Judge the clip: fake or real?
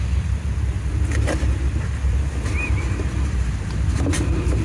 real